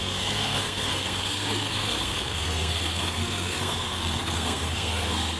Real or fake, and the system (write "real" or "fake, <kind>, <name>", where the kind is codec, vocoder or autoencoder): fake, codec, SNAC